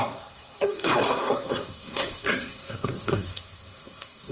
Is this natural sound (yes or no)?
no